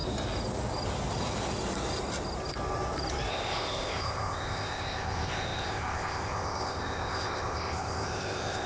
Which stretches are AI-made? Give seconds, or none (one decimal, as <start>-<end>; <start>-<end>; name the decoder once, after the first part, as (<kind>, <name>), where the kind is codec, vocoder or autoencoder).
3.3-8.7 (codec, ZipCodec)